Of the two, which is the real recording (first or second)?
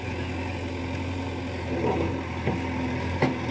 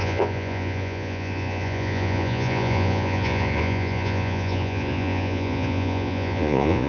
first